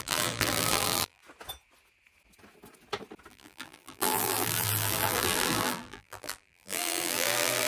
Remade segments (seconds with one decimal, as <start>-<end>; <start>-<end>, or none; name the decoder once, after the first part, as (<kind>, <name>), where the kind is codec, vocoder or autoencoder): 0.0-1.2 (vocoder, BigVGAN v2); 3.3-7.7